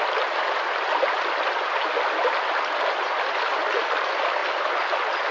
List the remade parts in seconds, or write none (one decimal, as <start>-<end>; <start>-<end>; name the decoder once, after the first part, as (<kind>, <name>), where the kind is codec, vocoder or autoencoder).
none